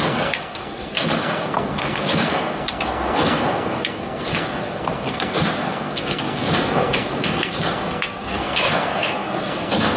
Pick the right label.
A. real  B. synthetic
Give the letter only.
B